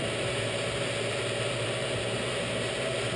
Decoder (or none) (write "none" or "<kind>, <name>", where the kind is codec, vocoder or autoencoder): none